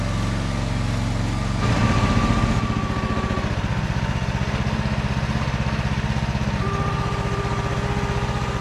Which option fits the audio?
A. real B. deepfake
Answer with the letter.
A